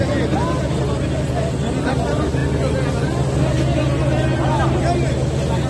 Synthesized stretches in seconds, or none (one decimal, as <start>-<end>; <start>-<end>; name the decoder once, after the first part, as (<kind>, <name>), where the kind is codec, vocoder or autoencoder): none